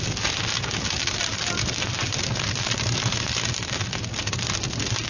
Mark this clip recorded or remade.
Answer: recorded